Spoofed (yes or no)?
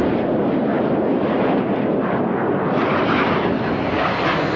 no